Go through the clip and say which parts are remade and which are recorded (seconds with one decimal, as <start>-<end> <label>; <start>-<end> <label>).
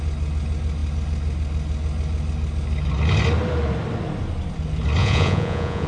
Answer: 0.0-5.0 recorded; 5.0-5.9 remade